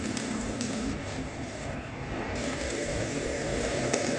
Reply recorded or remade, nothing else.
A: remade